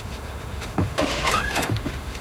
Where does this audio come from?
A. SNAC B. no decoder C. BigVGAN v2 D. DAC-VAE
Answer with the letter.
D